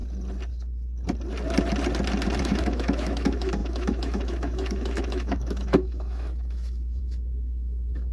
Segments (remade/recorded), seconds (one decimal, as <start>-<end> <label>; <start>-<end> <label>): 0.0-2.4 recorded; 2.4-8.1 remade